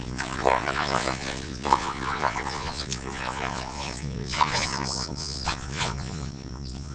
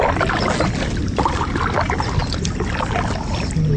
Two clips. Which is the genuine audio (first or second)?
second